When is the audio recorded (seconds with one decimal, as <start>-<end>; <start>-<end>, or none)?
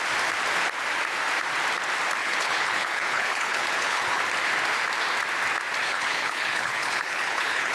0.0-2.2; 4.2-5.8